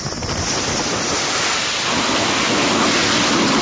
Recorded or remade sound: recorded